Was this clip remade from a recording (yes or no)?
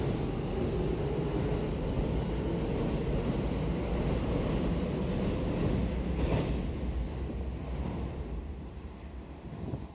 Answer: no